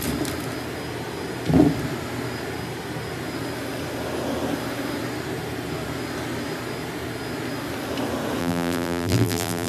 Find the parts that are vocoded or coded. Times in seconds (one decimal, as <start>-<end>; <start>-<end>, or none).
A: 8.4-9.7